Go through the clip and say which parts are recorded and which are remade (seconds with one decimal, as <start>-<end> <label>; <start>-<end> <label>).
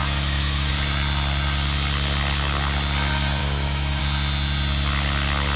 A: 0.0-0.7 remade; 0.7-3.4 recorded; 3.4-4.0 remade; 4.0-5.6 recorded